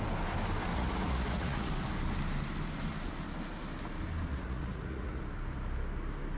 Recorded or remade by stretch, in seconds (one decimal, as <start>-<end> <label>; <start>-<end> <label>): 0.0-0.7 recorded; 0.7-1.7 remade; 1.7-4.3 recorded; 4.3-5.2 remade; 5.2-6.4 recorded